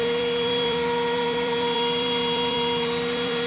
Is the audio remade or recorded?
remade